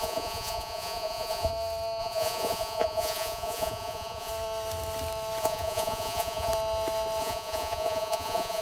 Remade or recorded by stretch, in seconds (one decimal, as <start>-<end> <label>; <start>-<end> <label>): 0.0-1.5 remade; 1.5-2.0 recorded; 2.0-4.3 remade; 4.3-5.4 recorded; 5.4-6.5 remade; 6.5-7.2 recorded; 7.2-8.6 remade